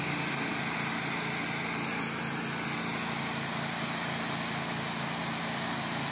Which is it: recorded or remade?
recorded